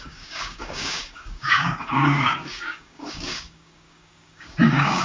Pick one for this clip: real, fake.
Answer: fake